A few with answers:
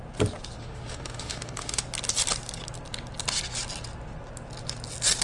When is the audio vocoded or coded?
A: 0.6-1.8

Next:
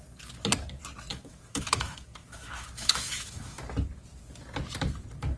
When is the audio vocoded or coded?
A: 1.1-3.6

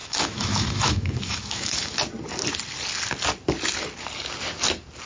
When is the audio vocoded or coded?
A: 0.0-2.0

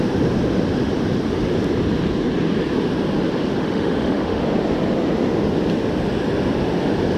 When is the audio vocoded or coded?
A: 3.6-4.4

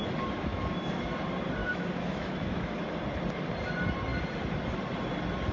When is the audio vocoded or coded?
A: 0.5-1.0; 1.6-2.8